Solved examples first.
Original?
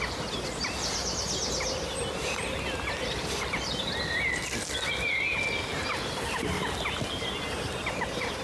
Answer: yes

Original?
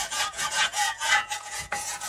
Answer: no